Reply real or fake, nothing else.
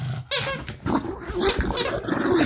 real